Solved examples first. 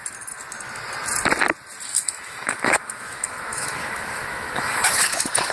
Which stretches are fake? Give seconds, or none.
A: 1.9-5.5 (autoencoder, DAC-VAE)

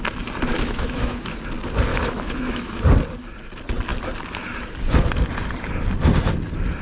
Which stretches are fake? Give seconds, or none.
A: 0.5-1.4 (autoencoder, DAC-VAE); 1.9-2.8

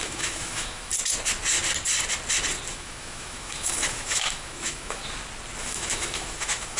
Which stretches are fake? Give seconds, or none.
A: 0.0-0.9 (autoencoder, DAC-VAE); 2.7-5.0; 5.6-6.8

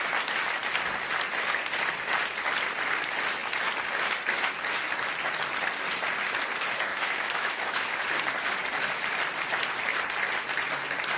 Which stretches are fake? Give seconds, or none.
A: 6.9-8.0 (autoencoder, DAC-VAE)